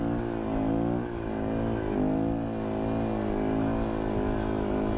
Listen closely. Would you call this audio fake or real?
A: real